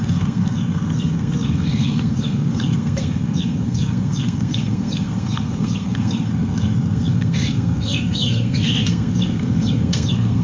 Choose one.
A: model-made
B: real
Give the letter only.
A